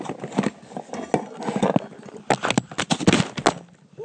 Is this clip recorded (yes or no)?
yes